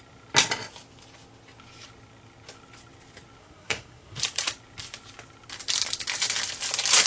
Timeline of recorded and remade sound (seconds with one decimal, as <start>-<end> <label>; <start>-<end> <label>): 0.0-3.4 recorded; 3.4-4.2 remade; 4.2-7.1 recorded